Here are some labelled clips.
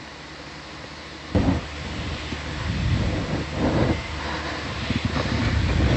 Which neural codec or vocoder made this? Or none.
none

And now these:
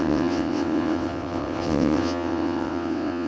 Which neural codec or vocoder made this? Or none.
vocoder, WaveNeXt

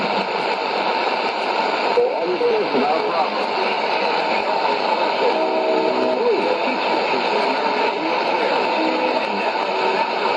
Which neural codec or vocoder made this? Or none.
none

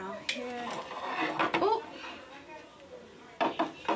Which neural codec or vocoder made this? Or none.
none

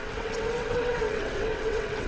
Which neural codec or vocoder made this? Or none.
vocoder, WaveNeXt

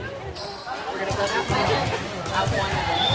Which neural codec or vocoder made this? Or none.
none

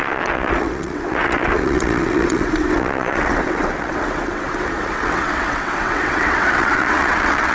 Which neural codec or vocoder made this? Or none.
vocoder, WaveNeXt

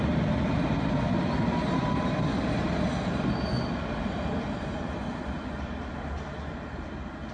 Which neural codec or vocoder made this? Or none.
none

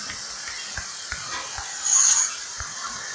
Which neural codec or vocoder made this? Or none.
none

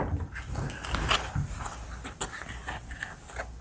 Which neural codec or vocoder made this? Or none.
none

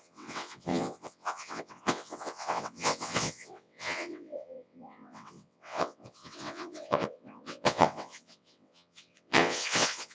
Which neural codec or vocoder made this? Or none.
vocoder, WaveNeXt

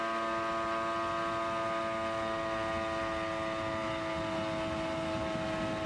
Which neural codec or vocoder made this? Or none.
none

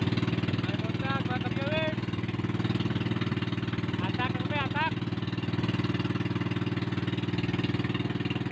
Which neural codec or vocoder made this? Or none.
none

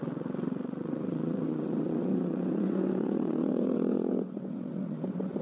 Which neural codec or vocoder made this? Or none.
vocoder, WaveNeXt